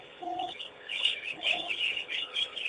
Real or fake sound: fake